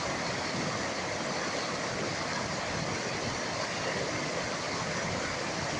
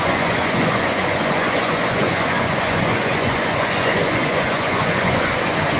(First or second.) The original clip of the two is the first